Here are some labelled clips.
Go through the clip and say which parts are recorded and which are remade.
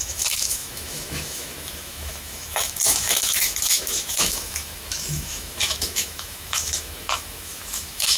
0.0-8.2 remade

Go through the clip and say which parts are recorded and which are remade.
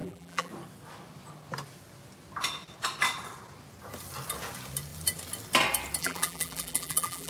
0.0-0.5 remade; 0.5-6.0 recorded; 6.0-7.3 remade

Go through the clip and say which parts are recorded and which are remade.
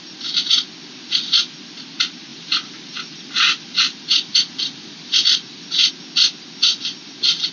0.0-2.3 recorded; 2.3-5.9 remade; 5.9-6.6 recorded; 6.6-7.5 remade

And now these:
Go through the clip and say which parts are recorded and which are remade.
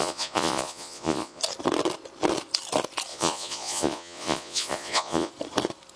0.0-1.4 remade; 1.4-3.1 recorded; 3.1-5.3 remade; 5.3-6.0 recorded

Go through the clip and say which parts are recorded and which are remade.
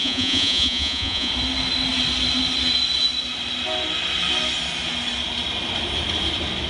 0.0-1.3 remade; 1.3-6.7 recorded